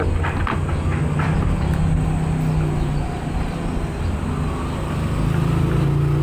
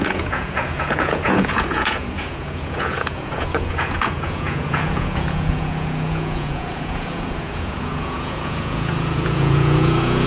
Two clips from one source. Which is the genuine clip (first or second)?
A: first